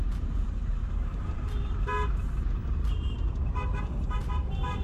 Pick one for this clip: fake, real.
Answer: fake